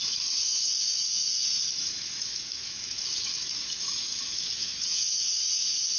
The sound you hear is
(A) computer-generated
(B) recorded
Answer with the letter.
A